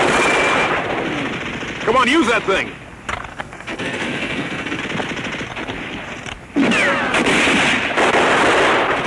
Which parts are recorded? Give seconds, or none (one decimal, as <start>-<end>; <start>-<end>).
0.0-3.3; 4.8-9.1